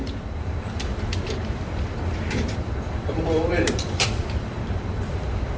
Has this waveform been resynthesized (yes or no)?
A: yes